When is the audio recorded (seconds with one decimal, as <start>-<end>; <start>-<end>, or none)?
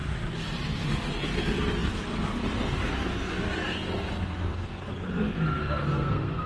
0.0-5.8